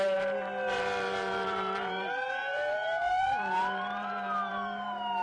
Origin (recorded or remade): remade